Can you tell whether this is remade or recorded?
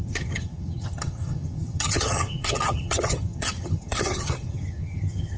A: remade